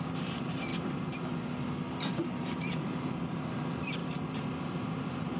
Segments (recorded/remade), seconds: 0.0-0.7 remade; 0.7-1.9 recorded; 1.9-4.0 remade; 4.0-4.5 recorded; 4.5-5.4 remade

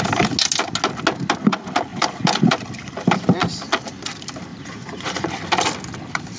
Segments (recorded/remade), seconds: 0.0-4.5 recorded; 4.5-5.3 remade; 5.3-6.4 recorded

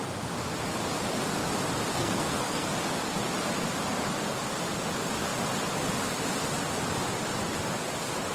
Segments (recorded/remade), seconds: 0.0-1.9 recorded; 1.9-2.7 remade; 2.7-8.3 recorded